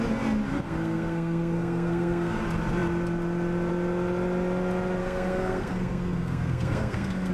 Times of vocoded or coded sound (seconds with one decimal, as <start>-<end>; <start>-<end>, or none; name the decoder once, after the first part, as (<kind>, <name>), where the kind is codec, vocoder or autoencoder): 0.5-2.4 (codec, SNAC); 5.0-7.3